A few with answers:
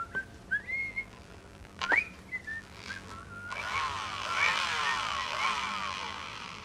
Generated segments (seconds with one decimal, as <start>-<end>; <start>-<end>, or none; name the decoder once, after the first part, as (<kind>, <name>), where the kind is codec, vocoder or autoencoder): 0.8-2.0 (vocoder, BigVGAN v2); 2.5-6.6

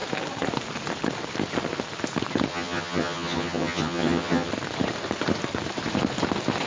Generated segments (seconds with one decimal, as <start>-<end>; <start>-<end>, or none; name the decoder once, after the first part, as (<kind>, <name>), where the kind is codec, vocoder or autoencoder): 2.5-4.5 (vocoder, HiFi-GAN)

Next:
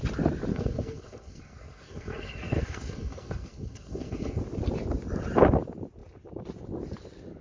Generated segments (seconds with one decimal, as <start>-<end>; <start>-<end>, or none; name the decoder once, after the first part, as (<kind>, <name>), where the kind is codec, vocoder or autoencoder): 0.5-4.4 (codec, SNAC)

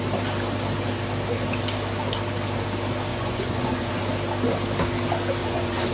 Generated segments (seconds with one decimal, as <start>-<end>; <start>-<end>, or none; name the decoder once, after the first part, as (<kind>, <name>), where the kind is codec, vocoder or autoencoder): 3.1-3.9 (vocoder, Vocos); 5.4-5.9

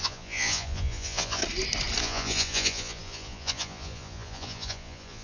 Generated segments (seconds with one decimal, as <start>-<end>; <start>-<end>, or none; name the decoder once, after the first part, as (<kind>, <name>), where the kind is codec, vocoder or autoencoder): 0.0-1.4 (vocoder, Vocos); 2.0-5.2

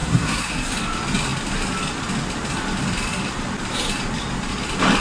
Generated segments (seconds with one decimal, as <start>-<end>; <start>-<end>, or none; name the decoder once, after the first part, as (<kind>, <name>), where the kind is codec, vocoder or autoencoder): 0.0-0.7 (codec, SNAC)